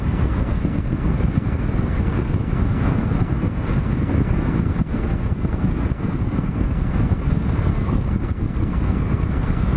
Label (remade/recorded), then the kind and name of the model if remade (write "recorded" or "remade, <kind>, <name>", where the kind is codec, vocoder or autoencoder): remade, codec, SNAC